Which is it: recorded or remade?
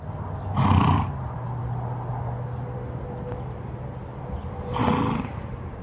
recorded